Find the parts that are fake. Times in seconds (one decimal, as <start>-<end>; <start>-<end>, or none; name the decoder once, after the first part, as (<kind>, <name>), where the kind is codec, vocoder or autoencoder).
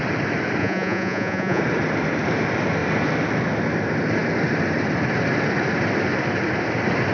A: 0.6-1.6 (vocoder, Vocos)